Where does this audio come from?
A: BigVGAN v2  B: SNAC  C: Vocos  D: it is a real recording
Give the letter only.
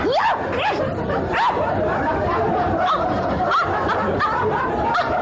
D